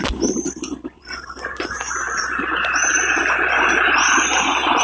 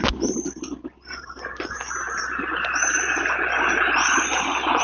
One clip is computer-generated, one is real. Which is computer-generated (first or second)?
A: first